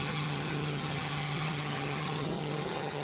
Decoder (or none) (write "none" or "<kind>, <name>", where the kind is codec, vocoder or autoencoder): vocoder, HiFi-GAN